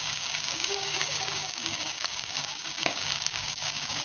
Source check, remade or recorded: remade